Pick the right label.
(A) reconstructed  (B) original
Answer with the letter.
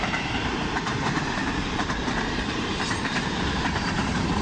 A